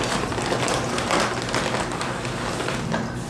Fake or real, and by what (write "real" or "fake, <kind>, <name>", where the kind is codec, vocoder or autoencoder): real